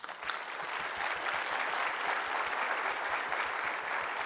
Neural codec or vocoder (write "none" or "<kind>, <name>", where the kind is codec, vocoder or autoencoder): none